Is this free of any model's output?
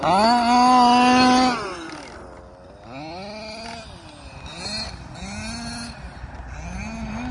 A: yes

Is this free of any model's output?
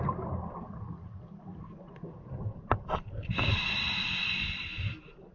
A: yes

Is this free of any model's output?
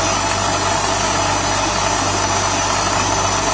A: yes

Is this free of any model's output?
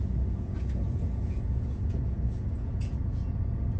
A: no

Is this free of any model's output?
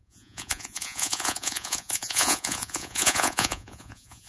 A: no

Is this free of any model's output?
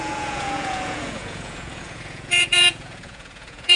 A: no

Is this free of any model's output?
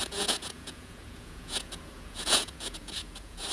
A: no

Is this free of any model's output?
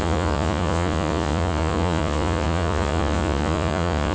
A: no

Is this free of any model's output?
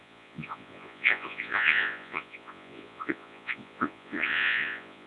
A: no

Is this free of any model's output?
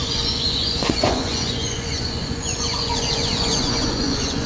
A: no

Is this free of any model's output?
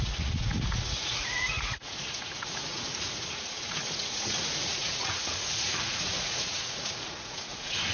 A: no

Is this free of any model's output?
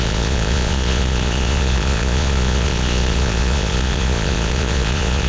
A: no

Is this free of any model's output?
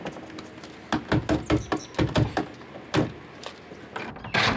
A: yes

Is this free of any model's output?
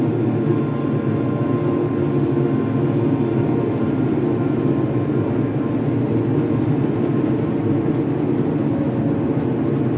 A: yes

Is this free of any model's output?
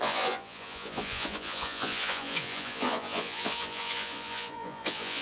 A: no